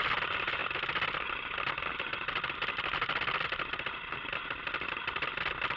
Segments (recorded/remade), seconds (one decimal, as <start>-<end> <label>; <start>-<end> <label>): 0.0-5.8 recorded